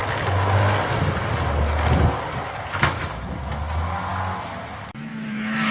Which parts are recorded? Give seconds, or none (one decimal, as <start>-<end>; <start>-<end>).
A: 0.0-5.1